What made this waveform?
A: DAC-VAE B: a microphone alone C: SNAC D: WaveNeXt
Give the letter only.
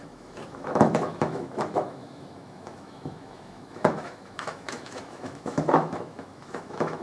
A